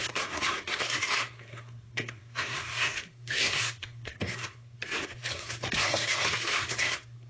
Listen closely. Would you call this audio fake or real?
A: fake